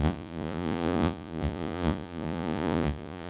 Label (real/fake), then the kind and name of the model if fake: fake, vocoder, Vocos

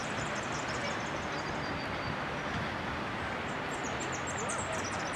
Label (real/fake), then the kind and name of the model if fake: real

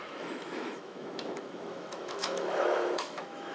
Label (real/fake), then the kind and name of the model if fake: fake, autoencoder, DAC-VAE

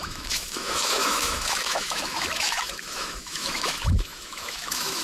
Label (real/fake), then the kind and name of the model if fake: fake, autoencoder, DAC-VAE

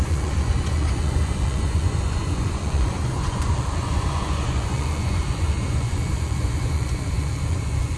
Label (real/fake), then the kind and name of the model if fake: fake, vocoder, Vocos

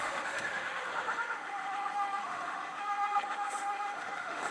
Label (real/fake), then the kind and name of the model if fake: fake, autoencoder, DAC-VAE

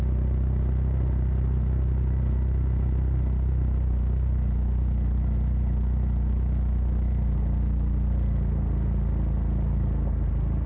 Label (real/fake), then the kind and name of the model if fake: real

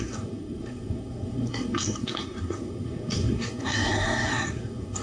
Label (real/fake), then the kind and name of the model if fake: fake, codec, SNAC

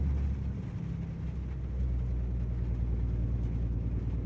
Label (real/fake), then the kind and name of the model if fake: real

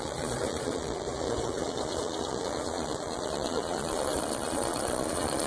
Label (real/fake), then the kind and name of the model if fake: fake, vocoder, Vocos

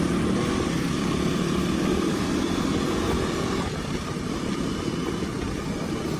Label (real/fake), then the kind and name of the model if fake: real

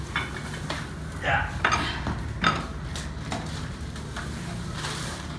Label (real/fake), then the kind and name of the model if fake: real